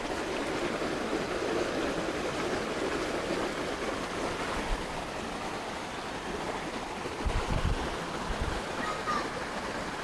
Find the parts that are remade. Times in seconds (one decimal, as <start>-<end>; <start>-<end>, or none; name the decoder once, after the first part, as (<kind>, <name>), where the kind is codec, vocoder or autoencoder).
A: none